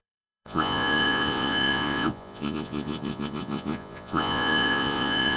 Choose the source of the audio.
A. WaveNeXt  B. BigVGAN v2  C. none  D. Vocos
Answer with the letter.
D